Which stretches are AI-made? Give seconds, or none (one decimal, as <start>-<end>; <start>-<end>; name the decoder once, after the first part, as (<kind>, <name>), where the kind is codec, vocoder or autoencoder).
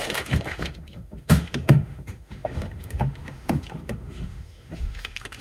0.0-5.4 (autoencoder, DAC-VAE)